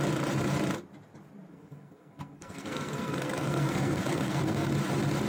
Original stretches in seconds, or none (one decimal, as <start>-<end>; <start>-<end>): 0.0-1.5; 4.7-5.3